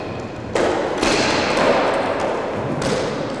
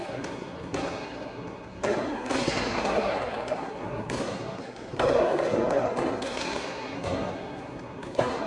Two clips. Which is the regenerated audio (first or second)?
second